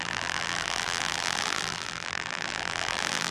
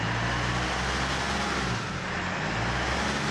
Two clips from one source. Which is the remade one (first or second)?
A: first